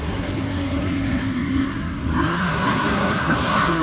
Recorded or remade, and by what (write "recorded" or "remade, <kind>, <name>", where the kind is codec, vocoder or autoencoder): remade, codec, SNAC